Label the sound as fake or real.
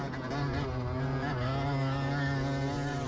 real